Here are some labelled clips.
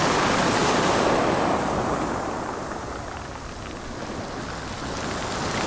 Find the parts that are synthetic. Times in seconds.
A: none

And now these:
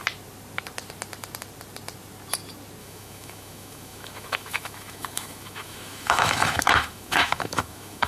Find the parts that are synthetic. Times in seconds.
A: 2.8-8.1 (autoencoder, DAC-VAE)

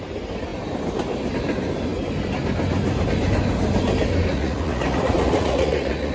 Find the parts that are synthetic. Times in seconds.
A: 4.3-6.1 (vocoder, Vocos)

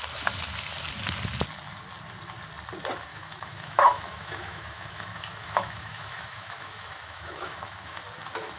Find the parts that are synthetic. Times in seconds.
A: 3.1-8.0 (autoencoder, DAC-VAE)

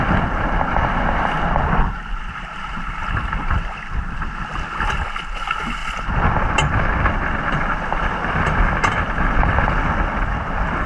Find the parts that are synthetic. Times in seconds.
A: none

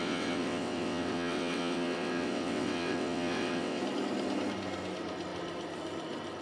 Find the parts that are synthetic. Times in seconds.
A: 0.0-3.8 (vocoder, WaveNeXt)